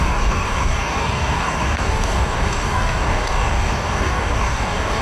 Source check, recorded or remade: remade